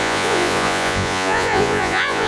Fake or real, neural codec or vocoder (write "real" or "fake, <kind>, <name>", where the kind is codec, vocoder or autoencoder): fake, vocoder, Vocos